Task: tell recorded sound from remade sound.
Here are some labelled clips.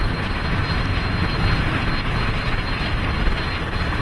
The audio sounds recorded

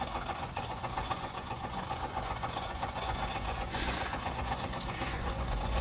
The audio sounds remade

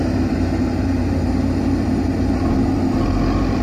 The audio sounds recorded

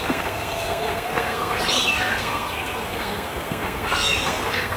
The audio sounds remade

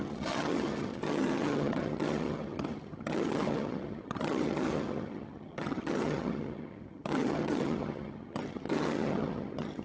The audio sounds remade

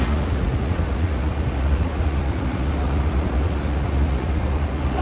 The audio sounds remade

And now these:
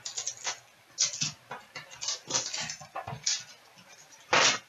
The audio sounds recorded